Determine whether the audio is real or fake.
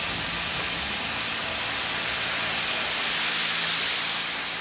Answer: real